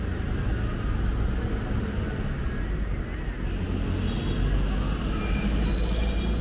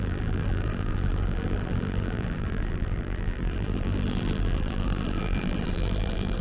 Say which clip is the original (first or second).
first